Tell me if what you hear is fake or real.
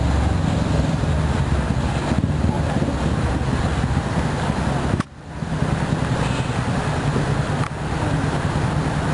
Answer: real